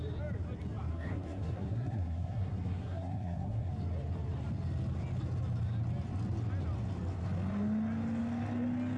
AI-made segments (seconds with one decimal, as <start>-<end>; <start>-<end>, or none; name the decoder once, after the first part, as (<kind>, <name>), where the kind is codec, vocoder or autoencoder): 0.9-3.7 (codec, SNAC)

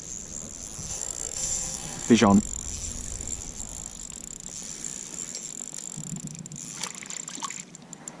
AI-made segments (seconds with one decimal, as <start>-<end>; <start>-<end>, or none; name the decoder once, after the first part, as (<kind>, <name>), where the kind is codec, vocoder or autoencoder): 0.9-2.1 (codec, SNAC)

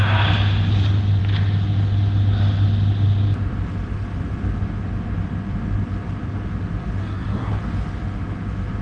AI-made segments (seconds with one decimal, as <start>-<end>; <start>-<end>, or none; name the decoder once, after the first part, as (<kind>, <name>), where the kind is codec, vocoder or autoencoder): 7.0-7.5 (codec, SNAC)

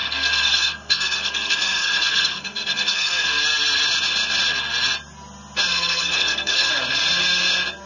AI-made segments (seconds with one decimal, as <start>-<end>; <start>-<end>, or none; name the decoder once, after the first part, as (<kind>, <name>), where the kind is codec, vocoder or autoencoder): 0.0-3.4 (codec, SNAC); 5.7-6.7

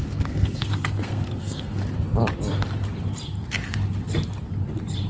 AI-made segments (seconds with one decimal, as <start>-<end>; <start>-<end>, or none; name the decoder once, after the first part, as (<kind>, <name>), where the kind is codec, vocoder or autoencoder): 0.0-1.8 (codec, SNAC)

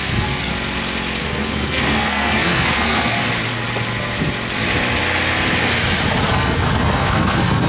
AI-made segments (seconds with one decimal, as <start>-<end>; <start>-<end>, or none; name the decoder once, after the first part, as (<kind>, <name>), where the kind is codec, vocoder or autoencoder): 0.0-0.5 (codec, SNAC); 1.2-3.2; 6.3-7.7

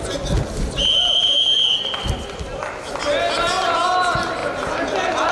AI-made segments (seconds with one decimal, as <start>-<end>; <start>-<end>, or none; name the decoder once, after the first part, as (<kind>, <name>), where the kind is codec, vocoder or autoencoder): none

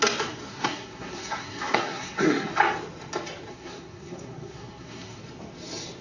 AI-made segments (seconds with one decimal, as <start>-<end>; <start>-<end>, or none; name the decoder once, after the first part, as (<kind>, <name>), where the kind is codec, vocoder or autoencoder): 0.5-2.5 (codec, SNAC); 3.5-5.2